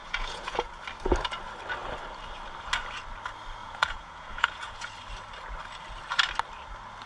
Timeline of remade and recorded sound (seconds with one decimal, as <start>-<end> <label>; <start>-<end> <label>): 0.0-0.7 remade; 0.7-3.6 recorded; 3.6-4.9 remade; 4.9-7.1 recorded